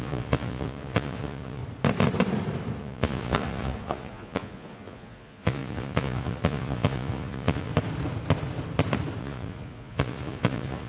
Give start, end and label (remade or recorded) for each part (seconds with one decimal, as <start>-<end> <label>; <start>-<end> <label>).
0.0-1.6 remade; 1.6-2.8 recorded; 2.8-7.7 remade; 7.7-9.2 recorded; 9.2-10.9 remade